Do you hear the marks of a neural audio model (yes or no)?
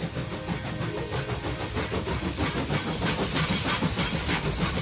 no